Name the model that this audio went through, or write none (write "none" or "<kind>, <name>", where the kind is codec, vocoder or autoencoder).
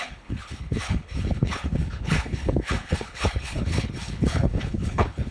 codec, HILCodec